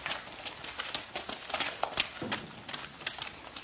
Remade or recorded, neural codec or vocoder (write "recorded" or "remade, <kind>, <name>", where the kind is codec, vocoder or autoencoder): recorded